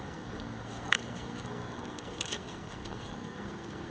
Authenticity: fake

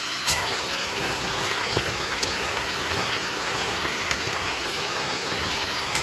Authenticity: fake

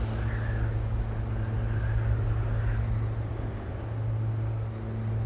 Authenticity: real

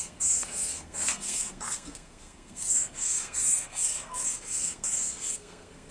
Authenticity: fake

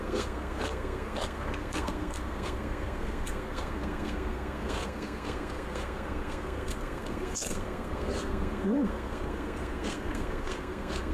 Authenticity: fake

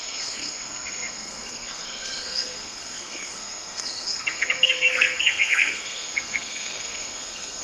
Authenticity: fake